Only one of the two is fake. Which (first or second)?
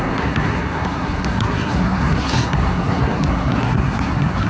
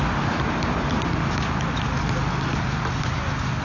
first